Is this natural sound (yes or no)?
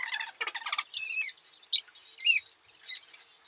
yes